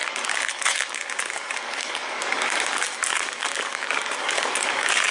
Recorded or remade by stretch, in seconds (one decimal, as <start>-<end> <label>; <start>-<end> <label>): 0.0-5.1 remade